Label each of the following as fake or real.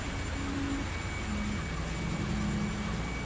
real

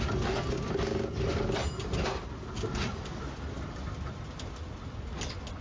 real